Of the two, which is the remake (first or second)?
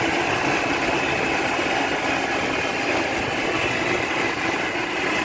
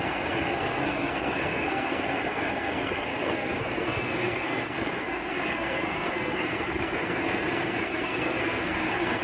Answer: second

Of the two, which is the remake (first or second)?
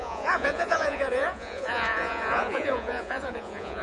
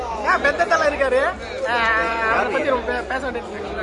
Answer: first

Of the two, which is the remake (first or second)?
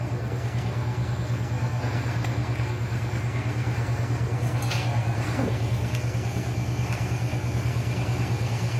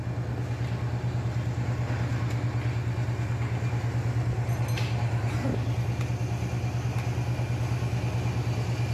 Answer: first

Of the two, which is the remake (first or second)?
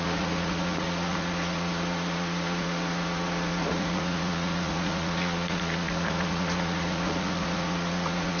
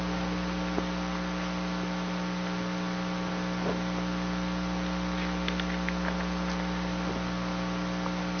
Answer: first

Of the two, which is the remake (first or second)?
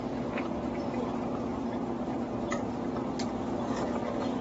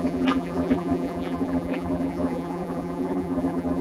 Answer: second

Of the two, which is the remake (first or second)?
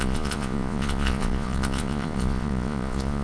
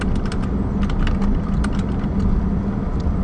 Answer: first